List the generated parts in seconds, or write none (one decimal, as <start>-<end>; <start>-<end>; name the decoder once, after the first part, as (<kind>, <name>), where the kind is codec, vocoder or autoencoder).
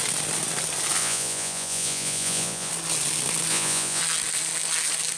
1.0-2.7 (vocoder, Vocos); 3.5-4.0